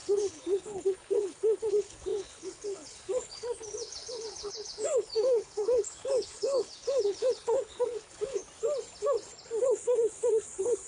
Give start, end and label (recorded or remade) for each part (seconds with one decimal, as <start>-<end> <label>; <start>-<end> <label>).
0.0-8.4 remade; 8.4-9.6 recorded; 9.6-10.9 remade